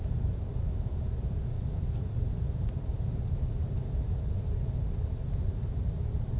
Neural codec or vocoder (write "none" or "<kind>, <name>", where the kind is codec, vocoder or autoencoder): vocoder, BigVGAN v2